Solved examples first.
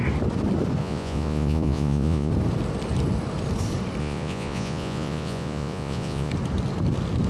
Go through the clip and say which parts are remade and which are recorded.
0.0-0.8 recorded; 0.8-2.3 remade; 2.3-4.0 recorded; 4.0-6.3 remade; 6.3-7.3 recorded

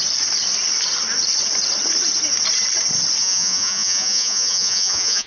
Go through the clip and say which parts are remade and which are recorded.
0.0-3.2 recorded; 3.2-5.3 remade